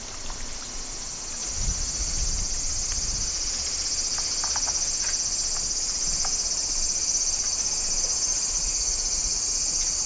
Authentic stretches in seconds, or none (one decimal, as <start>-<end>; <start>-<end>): 0.0-1.4; 2.3-8.3